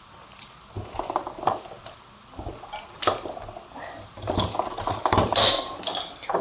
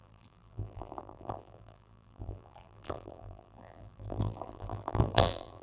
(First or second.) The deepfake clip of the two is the second